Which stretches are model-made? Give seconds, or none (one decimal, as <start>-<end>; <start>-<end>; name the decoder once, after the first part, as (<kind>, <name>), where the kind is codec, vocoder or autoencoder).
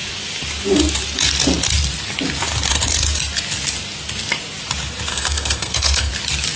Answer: 5.1-6.1 (codec, SNAC)